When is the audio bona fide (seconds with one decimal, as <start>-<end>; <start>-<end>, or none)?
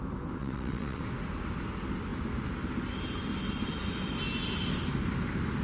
0.0-0.4; 1.0-5.6